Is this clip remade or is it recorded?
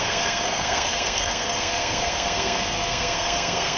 remade